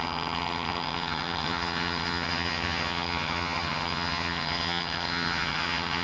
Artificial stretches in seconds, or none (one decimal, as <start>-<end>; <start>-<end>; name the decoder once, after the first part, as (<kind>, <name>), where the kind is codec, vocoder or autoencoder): 0.0-6.0 (vocoder, HiFi-GAN)